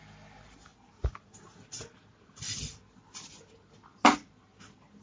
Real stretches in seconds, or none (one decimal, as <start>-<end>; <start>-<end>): 0.0-5.0